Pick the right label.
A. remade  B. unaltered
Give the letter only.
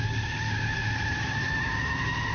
B